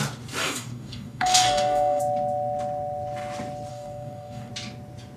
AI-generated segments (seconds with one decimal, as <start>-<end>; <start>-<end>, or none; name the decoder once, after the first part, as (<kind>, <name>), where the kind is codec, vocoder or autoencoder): 0.4-2.0 (codec, DAC); 3.7-4.5